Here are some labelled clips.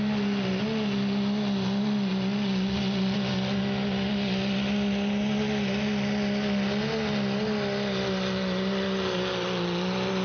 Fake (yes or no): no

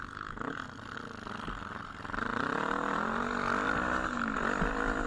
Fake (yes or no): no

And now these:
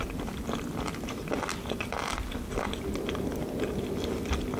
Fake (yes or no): no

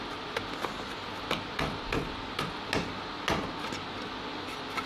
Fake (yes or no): no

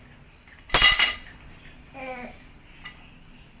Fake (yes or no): no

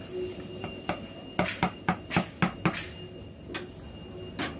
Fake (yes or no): no